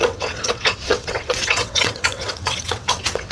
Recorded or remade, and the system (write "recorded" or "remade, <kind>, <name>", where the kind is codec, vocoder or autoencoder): remade, vocoder, WaveNeXt